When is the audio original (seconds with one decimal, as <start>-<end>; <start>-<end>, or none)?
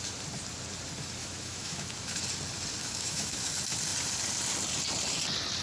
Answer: 0.0-1.2; 2.2-2.8; 3.5-5.6